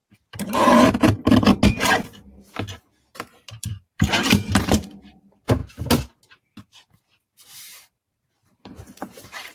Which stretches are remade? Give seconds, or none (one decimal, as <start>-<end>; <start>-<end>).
3.1-5.6; 7.5-9.5